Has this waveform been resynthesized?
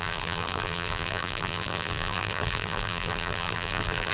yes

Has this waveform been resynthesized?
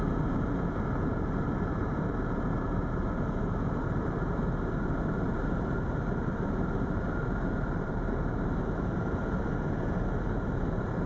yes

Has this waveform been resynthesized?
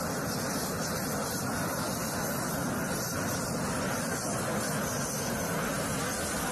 yes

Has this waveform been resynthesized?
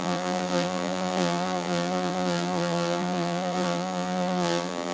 yes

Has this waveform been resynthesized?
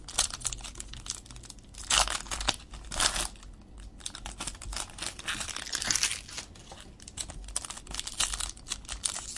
no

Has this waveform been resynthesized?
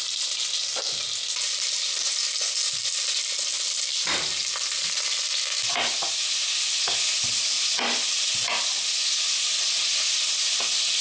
no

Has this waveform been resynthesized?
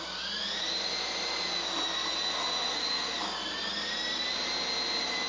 no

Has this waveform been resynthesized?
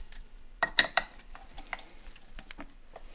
yes